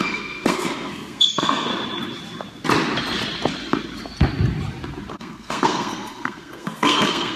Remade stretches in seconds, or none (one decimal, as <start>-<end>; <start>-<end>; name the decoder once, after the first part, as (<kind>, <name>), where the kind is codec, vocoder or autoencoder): 0.0-1.7 (codec, SNAC); 5.1-7.4